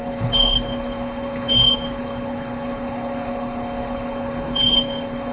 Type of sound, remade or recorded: remade